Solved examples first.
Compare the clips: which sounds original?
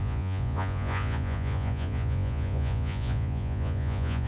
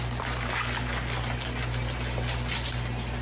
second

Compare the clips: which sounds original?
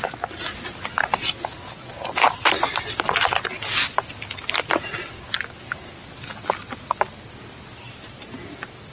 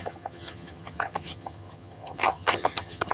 first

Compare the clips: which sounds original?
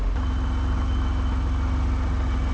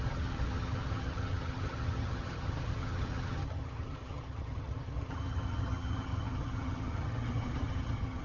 first